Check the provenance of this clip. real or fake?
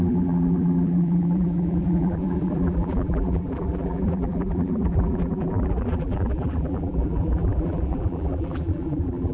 fake